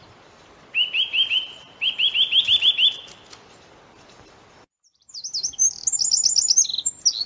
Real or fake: real